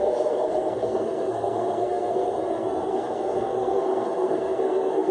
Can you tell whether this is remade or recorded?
remade